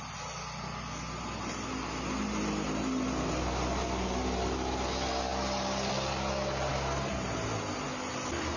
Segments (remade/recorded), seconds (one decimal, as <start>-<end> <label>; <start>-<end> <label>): 0.0-8.6 recorded